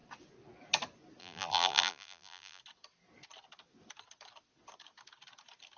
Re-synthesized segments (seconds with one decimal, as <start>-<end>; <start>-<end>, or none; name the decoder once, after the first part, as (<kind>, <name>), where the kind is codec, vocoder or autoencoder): 1.2-2.6 (vocoder, BigVGAN v2)